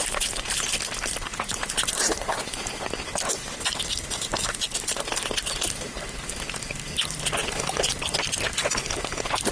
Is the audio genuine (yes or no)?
yes